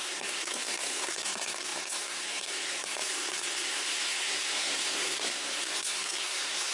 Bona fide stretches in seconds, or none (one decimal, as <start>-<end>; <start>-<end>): none